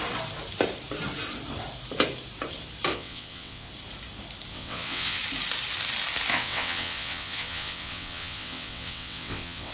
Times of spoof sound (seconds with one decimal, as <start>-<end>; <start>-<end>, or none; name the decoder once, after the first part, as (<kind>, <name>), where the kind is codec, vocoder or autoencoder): 2.9-3.7 (vocoder, WaveNeXt); 4.5-5.2; 6.3-9.7